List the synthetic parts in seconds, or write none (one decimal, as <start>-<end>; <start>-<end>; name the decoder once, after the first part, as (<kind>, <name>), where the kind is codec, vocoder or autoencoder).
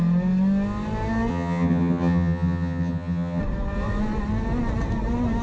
1.3-3.4 (vocoder, HiFi-GAN)